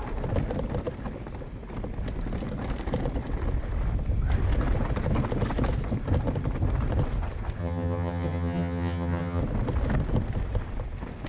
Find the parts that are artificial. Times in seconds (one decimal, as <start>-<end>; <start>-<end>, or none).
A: 7.6-9.4